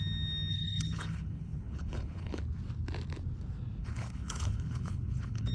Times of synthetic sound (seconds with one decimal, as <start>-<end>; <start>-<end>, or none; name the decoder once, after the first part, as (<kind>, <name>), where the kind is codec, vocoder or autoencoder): 0.5-2.4 (codec, HILCodec); 3.8-5.5